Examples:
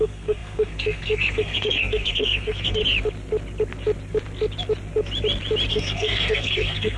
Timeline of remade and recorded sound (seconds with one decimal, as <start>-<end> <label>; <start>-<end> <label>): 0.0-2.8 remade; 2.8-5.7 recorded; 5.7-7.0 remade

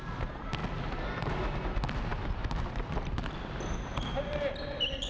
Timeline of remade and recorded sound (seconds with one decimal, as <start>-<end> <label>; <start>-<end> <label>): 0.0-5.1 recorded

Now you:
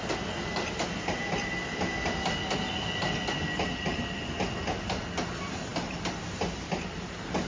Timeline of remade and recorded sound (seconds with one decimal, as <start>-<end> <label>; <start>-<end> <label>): 0.0-7.5 recorded